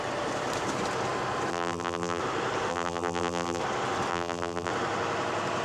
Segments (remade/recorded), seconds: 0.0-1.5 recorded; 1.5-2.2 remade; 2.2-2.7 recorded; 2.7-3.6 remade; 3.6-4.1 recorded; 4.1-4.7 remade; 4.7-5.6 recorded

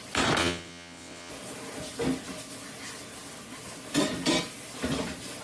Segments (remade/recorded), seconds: 0.0-0.4 recorded; 0.4-1.3 remade; 1.3-5.4 recorded

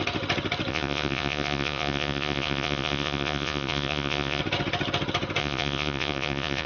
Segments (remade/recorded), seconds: 0.0-0.7 recorded; 0.7-4.4 remade; 4.4-5.4 recorded; 5.4-6.7 remade

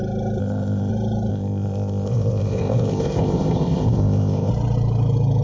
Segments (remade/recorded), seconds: 0.0-0.4 recorded; 0.4-0.9 remade; 0.9-1.3 recorded; 1.3-4.5 remade; 4.5-5.4 recorded

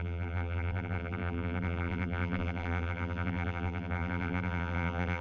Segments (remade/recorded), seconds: 0.0-5.2 remade